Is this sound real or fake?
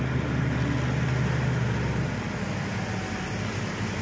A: real